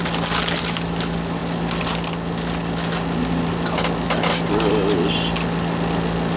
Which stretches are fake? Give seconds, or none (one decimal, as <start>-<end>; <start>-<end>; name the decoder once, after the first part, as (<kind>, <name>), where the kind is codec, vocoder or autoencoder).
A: none